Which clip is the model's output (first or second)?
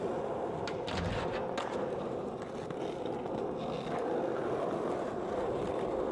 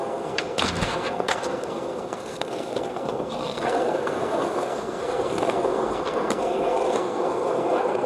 second